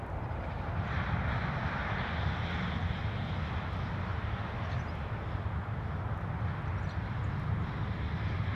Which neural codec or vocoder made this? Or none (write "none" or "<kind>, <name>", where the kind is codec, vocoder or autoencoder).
none